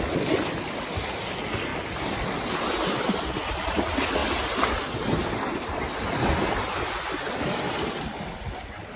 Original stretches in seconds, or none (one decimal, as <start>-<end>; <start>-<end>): 0.0-9.0